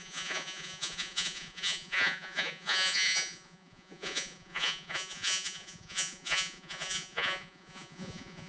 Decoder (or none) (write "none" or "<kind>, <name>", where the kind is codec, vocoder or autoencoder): vocoder, Vocos